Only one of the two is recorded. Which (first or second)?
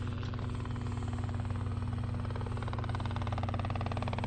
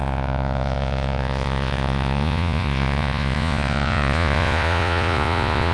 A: first